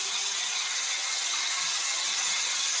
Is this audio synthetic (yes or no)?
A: yes